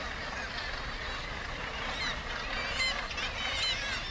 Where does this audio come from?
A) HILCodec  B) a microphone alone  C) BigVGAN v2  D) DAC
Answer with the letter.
B